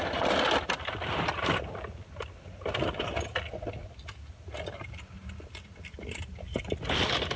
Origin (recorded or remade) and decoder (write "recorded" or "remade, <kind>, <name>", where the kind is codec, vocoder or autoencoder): recorded